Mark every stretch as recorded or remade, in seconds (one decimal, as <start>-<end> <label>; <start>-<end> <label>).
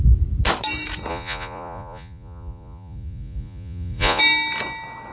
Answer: 0.0-1.1 recorded; 1.1-4.2 remade; 4.2-5.1 recorded